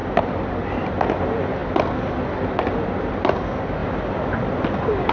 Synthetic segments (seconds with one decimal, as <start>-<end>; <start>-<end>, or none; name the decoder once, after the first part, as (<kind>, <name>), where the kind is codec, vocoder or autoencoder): none